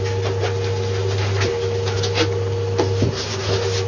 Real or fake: real